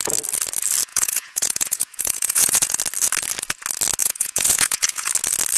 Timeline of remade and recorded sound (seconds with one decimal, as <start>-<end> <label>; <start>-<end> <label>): 0.0-0.9 recorded; 0.9-2.8 remade; 2.8-4.0 recorded; 4.0-5.1 remade; 5.1-5.6 recorded